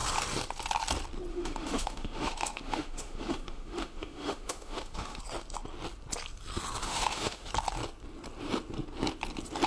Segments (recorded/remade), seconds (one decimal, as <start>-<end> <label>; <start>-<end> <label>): 0.0-1.3 recorded; 1.3-5.2 remade; 5.2-6.8 recorded; 6.8-7.5 remade; 7.5-9.7 recorded